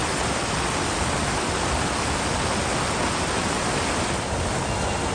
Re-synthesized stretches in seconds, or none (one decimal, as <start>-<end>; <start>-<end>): 0.0-2.1